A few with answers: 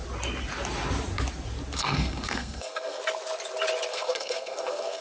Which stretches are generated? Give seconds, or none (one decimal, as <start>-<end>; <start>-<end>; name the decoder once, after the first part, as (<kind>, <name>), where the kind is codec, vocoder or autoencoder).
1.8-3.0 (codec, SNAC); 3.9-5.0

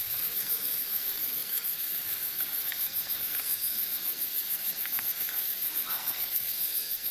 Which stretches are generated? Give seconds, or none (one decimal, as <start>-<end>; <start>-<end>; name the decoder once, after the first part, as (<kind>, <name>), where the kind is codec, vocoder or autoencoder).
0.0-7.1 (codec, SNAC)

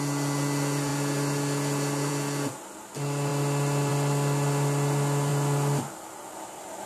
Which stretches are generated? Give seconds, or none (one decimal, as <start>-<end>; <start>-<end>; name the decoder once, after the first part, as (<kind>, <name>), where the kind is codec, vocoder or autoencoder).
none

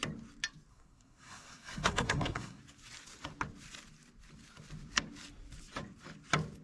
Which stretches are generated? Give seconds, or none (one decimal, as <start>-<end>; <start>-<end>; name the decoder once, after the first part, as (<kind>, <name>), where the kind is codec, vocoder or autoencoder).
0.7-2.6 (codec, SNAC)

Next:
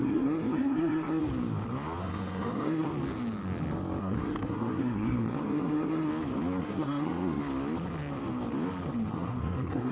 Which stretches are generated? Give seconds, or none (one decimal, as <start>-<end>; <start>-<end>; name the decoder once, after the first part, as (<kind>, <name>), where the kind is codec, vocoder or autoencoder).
0.0-1.2 (codec, SNAC); 2.0-2.9; 4.0-6.1; 6.6-7.4; 9.1-9.9

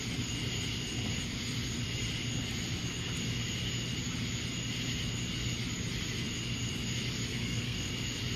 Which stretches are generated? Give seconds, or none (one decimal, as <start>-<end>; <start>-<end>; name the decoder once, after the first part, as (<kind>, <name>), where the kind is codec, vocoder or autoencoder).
7.3-7.9 (codec, SNAC)

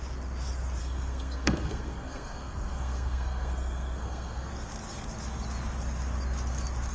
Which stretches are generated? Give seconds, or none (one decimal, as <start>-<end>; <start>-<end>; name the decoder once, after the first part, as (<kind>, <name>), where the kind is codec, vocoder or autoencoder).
0.8-4.5 (codec, SNAC)